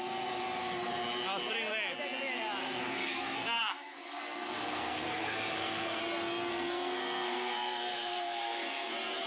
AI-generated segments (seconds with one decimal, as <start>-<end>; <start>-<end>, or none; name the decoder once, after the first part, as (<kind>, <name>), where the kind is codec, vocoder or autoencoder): 2.6-6.0 (codec, SNAC); 6.5-8.9